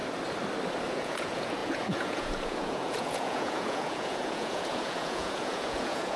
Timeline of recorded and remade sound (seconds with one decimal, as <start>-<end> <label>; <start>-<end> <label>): 0.0-0.9 recorded; 0.9-6.2 remade